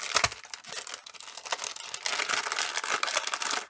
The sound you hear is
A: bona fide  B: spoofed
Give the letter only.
A